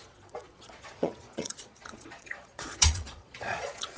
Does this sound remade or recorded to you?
remade